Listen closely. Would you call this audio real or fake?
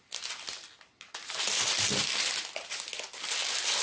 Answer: real